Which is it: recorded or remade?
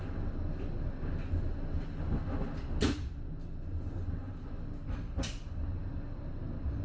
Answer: recorded